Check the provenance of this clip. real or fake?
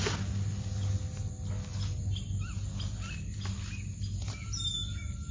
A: real